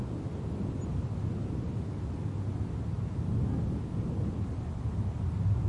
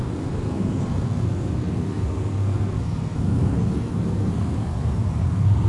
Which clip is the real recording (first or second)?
first